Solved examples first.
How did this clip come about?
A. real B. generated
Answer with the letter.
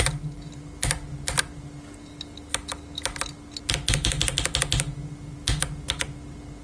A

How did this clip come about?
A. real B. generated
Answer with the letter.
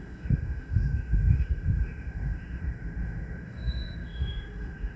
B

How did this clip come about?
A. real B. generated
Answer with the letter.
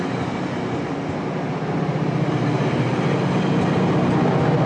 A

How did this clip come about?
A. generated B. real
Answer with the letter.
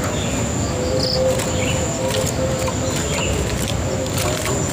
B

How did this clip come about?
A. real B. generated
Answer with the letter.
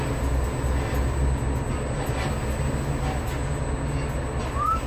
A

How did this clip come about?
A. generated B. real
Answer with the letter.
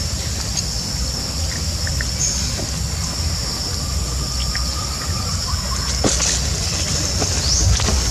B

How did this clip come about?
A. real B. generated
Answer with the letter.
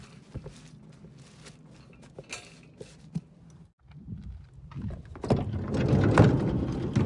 A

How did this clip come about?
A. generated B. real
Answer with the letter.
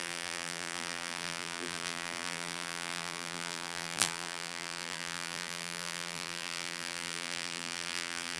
A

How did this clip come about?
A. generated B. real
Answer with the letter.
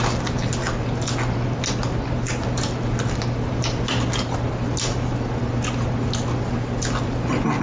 B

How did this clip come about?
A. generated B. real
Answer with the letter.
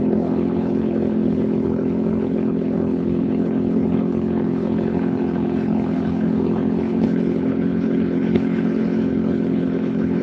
A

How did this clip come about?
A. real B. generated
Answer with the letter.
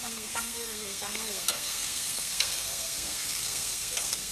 B